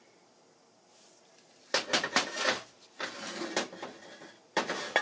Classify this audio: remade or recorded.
recorded